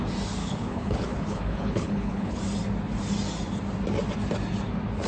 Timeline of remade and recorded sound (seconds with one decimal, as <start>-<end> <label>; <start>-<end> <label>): 0.0-0.4 recorded; 0.4-2.4 remade; 2.4-5.1 recorded